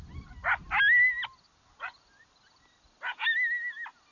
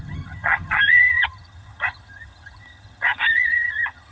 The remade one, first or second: second